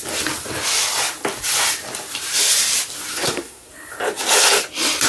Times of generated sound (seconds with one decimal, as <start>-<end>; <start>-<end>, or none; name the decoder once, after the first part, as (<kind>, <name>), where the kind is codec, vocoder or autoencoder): 3.1-3.7 (codec, SNAC)